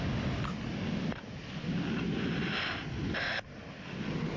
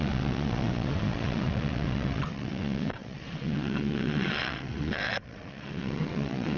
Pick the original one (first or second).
first